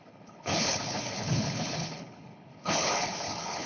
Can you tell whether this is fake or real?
fake